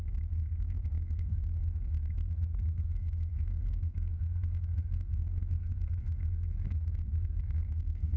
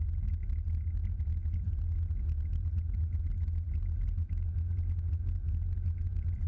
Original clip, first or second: second